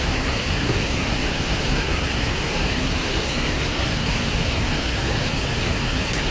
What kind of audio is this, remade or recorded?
remade